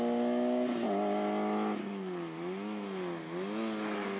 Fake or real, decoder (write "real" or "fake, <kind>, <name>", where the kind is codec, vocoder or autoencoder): real